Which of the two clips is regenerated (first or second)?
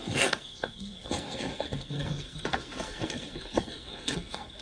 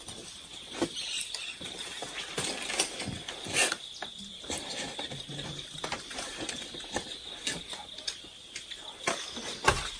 first